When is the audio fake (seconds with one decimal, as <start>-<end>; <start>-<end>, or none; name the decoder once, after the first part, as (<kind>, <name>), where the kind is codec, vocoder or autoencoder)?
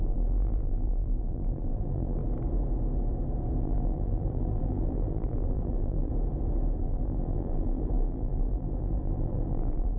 0.0-2.2 (vocoder, BigVGAN v2); 3.6-6.1; 6.8-10.0